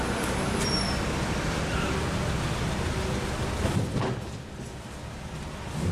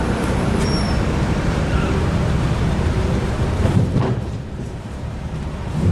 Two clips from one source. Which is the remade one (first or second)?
second